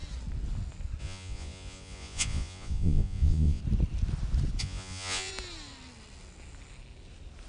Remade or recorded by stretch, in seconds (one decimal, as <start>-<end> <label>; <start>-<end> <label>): 0.0-1.0 recorded; 1.0-3.6 remade; 3.6-4.6 recorded; 4.6-5.3 remade; 5.3-7.5 recorded

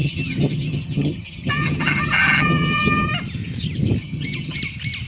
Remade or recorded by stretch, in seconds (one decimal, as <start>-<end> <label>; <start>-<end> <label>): 0.0-3.1 remade; 3.1-4.0 recorded; 4.0-4.6 remade; 4.6-5.1 recorded

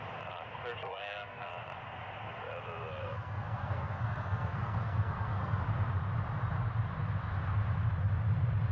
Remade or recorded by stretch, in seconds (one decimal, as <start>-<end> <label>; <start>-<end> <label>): 0.0-0.8 recorded; 0.8-1.5 remade; 1.5-3.0 recorded; 3.0-5.6 remade; 5.6-8.7 recorded

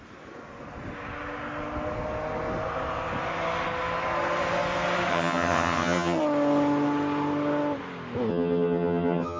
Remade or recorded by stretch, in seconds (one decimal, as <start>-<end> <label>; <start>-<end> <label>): 0.0-5.1 recorded; 5.1-6.2 remade; 6.2-8.3 recorded; 8.3-9.4 remade

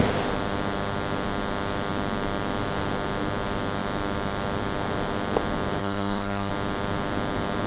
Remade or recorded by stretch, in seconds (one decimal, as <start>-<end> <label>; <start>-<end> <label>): 0.0-5.8 recorded; 5.8-6.5 remade; 6.5-7.7 recorded

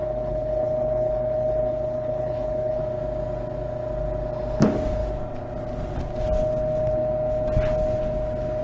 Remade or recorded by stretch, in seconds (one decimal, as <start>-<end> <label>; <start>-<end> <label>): 0.0-2.8 remade; 2.8-8.6 recorded

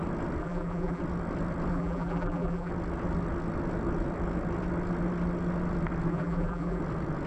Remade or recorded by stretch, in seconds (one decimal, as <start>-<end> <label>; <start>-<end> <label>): 0.0-0.4 recorded; 0.4-1.0 remade; 1.0-1.7 recorded; 1.7-2.7 remade; 2.7-6.1 recorded; 6.1-6.8 remade; 6.8-7.3 recorded

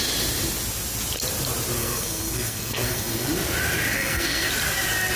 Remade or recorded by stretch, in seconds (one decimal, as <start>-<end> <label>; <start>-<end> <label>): 0.0-1.8 recorded; 1.8-3.3 remade; 3.3-3.9 recorded; 3.9-4.5 remade; 4.5-5.2 recorded